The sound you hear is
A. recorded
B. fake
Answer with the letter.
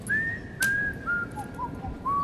A